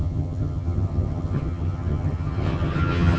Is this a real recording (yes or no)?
no